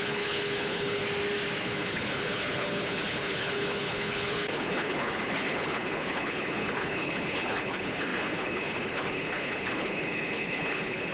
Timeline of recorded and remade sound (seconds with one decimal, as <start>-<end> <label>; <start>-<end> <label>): 0.0-1.0 remade; 1.0-1.6 recorded; 1.6-11.1 remade